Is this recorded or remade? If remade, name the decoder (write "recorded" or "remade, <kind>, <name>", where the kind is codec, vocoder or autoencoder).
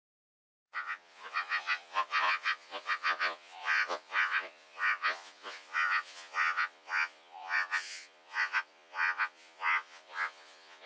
remade, vocoder, Vocos